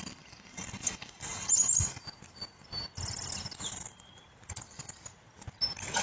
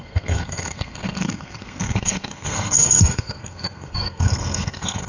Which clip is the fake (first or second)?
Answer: second